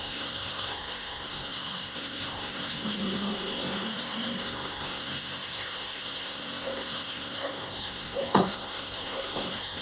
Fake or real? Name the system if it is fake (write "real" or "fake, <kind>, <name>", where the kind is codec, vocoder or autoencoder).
fake, codec, SNAC